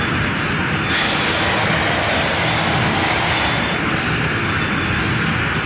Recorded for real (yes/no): yes